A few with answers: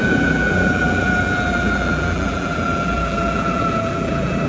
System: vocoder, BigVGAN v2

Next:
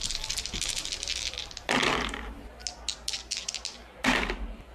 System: none